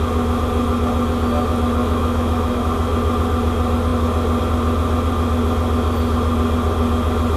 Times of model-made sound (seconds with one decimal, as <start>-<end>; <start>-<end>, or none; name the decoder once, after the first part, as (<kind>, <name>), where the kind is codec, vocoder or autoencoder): 1.8-2.6 (autoencoder, DAC-VAE)